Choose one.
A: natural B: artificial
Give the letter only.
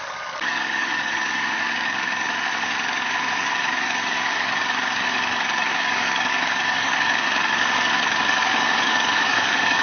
B